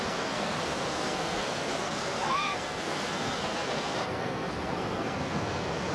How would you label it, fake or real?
fake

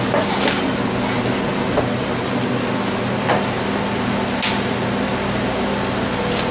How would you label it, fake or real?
real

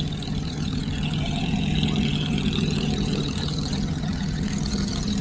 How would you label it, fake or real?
fake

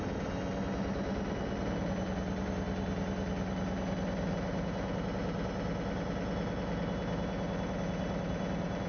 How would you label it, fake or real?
real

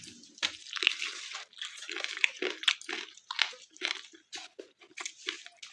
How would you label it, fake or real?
real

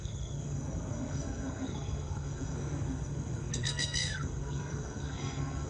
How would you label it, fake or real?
fake